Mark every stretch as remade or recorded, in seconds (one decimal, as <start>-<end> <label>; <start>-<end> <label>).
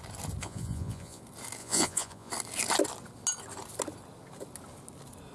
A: 0.0-0.4 recorded; 0.4-1.2 remade; 1.2-1.6 recorded; 1.6-2.3 remade; 2.3-5.3 recorded